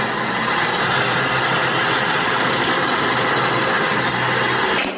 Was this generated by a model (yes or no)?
no